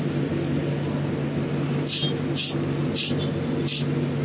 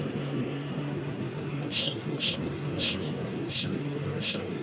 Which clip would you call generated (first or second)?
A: second